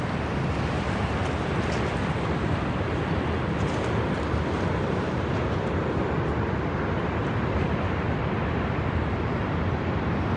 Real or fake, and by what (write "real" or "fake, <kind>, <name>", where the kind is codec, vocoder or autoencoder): real